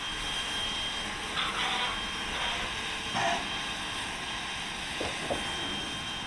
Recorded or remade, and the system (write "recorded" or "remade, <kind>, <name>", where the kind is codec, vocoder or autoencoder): recorded